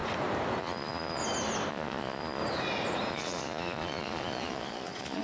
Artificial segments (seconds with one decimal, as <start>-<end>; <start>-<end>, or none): 0.6-1.2; 1.7-2.4; 3.1-5.2